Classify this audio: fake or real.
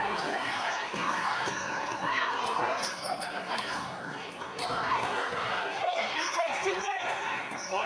fake